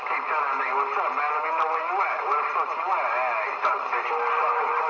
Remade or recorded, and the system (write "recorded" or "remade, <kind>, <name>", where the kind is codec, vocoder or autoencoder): recorded